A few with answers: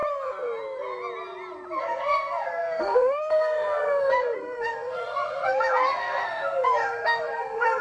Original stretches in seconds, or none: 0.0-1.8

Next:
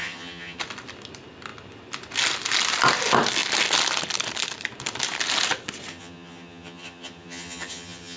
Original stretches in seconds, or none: 0.6-5.9

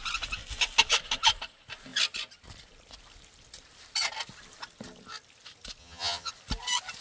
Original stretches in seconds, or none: 0.0-5.8; 6.3-7.0

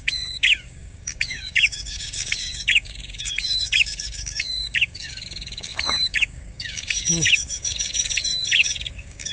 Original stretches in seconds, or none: none

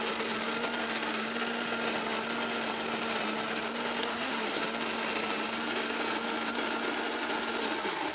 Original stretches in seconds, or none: 0.0-4.0; 4.6-8.1